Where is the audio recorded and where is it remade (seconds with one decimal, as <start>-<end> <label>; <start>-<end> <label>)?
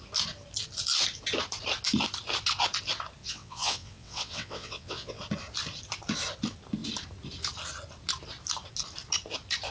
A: 0.0-3.2 recorded; 3.2-5.2 remade; 5.2-9.7 recorded